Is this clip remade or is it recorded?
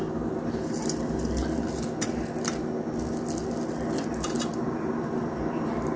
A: recorded